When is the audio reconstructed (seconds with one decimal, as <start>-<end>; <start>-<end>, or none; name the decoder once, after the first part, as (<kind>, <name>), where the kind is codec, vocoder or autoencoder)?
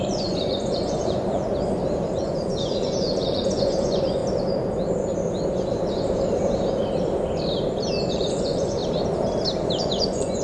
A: 0.0-1.5 (vocoder, Vocos); 2.2-4.2; 8.1-8.8; 9.8-10.4